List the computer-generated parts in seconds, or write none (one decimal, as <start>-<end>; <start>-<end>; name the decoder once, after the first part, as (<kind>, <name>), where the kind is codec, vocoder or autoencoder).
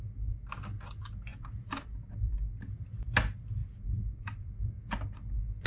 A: 1.3-2.5 (vocoder, BigVGAN v2); 3.6-4.7